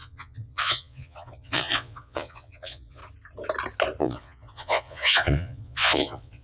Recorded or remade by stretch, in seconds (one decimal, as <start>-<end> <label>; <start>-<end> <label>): 0.0-3.0 remade; 3.0-4.0 recorded; 4.0-6.4 remade